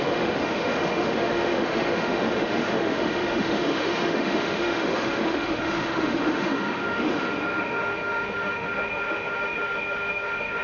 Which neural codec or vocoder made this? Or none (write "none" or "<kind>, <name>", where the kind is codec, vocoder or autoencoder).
autoencoder, DAC-VAE